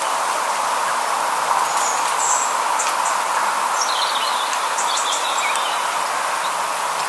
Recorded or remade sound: recorded